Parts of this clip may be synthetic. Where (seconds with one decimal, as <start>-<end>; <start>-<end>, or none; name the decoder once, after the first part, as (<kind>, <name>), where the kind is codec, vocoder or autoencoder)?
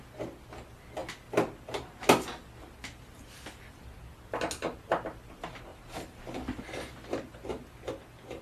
5.7-6.2 (vocoder, BigVGAN v2)